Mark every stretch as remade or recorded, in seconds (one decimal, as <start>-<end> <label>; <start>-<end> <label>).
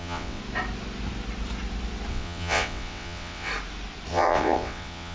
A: 0.0-0.4 remade; 0.4-2.1 recorded; 2.1-3.5 remade; 3.5-4.1 recorded; 4.1-5.1 remade